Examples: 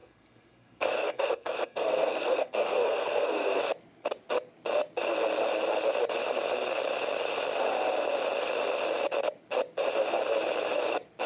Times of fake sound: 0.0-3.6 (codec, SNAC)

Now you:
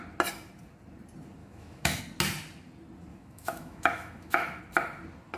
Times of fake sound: 1.4-2.0 (autoencoder, DAC-VAE); 3.1-4.6

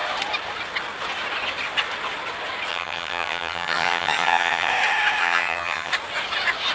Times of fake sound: 2.7-4.7 (vocoder, HiFi-GAN); 5.2-5.9

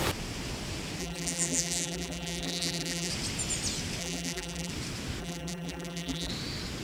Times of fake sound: 1.0-3.1 (vocoder, BigVGAN v2); 4.0-4.7; 5.2-6.3

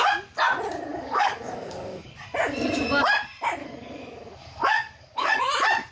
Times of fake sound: 0.9-2.1 (codec, DAC); 3.6-5.4

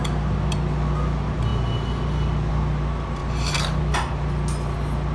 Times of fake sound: 3.2-3.8 (vocoder, BigVGAN v2)

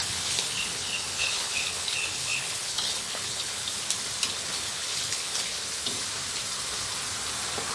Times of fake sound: 0.0-3.6 (codec, HILCodec); 4.5-5.6

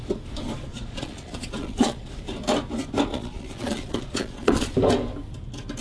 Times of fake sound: 0.7-2.2 (vocoder, Vocos); 3.1-4.7